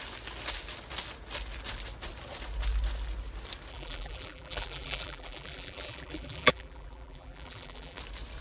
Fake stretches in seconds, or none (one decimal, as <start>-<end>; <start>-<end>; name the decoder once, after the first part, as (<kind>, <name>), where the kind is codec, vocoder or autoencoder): 3.7-8.0 (vocoder, BigVGAN v2)